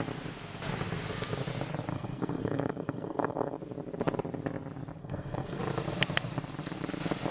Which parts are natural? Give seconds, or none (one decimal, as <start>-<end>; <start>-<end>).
0.0-1.9; 3.6-5.0; 5.6-7.3